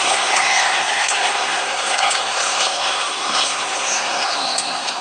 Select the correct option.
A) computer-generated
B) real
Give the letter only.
A